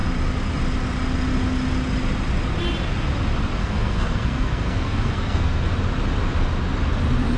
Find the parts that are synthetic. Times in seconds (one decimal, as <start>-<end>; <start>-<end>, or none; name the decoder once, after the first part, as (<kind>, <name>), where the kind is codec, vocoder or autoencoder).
3.6-5.7 (codec, SNAC)